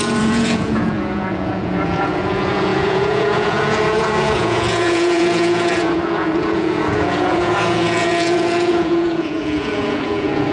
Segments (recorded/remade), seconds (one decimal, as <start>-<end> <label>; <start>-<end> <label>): 0.0-10.5 remade